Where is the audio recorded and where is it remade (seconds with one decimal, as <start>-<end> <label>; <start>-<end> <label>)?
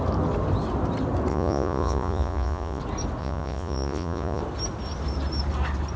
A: 0.0-1.3 recorded; 1.3-2.8 remade; 2.8-3.2 recorded; 3.2-4.4 remade; 4.4-6.0 recorded